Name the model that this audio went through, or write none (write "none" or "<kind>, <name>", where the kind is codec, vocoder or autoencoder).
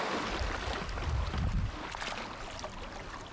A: none